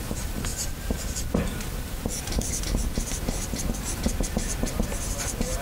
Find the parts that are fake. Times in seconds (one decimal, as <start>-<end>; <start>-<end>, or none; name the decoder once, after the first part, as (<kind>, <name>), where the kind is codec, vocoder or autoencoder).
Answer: 0.0-5.6 (vocoder, BigVGAN v2)